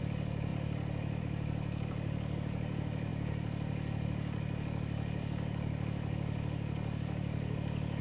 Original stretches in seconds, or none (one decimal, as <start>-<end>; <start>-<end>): none